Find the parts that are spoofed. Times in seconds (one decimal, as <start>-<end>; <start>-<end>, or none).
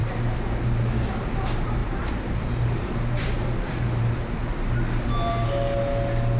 1.8-4.2